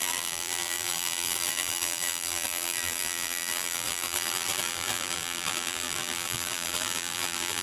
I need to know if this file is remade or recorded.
remade